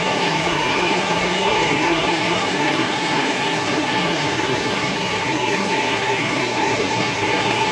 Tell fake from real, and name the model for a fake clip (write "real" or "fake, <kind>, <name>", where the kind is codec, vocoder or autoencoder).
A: fake, codec, SNAC